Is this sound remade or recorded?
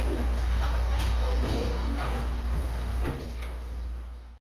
remade